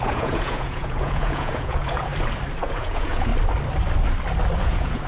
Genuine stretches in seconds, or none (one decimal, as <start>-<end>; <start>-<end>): 2.1-2.6; 3.3-4.6